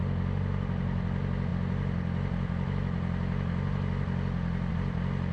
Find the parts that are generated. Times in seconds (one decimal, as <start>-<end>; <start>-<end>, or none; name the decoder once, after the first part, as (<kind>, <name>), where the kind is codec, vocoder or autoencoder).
none